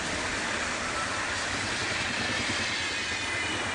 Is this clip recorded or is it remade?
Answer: remade